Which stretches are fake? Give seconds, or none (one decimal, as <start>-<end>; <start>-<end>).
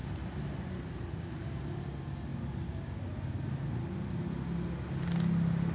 none